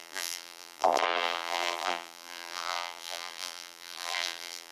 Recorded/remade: remade